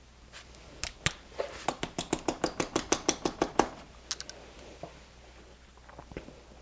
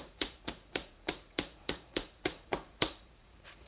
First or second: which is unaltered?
first